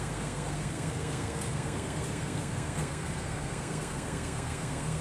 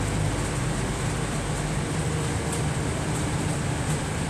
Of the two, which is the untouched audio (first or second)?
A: second